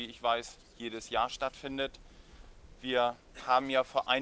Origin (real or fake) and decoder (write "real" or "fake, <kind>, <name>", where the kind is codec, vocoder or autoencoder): real